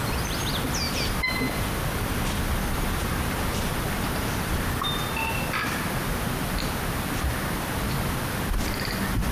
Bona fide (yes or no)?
yes